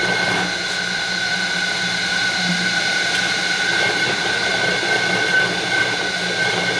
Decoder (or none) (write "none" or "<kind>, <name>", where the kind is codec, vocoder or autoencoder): none